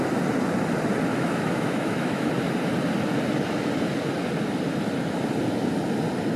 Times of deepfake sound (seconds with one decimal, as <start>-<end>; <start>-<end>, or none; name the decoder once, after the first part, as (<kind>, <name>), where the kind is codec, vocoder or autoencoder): 1.1-2.3 (autoencoder, DAC-VAE)